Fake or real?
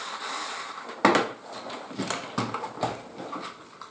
real